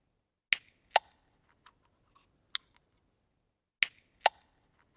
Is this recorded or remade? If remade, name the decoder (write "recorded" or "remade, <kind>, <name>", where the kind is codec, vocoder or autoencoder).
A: recorded